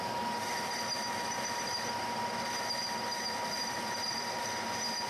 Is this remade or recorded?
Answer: recorded